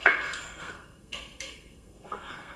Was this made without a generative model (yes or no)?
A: no